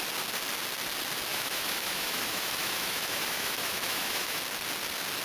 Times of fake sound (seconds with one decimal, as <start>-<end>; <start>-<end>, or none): 1.3-4.4